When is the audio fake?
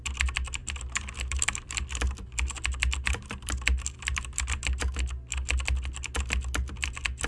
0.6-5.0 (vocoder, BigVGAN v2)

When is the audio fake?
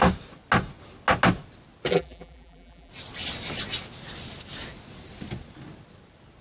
1.9-2.9 (vocoder, BigVGAN v2)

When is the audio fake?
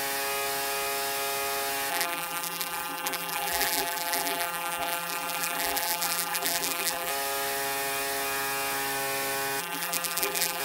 1.9-7.1 (vocoder, BigVGAN v2); 9.6-10.6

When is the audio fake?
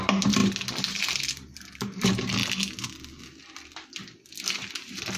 0.0-0.4 (vocoder, BigVGAN v2); 1.0-2.4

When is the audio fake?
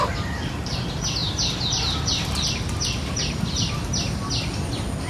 none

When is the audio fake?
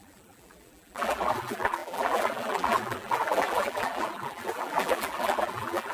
0.0-5.9 (vocoder, BigVGAN v2)